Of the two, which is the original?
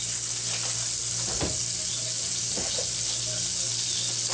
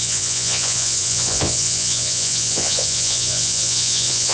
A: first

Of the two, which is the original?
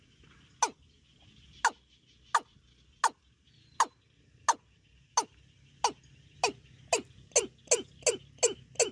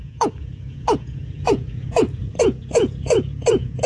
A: first